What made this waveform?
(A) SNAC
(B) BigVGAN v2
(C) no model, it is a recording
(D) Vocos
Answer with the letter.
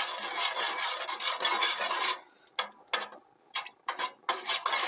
C